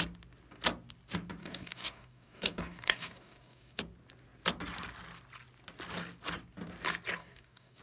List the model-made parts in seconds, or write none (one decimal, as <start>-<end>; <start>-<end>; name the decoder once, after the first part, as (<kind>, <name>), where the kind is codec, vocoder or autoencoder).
1.4-3.8 (codec, DAC); 7.2-7.8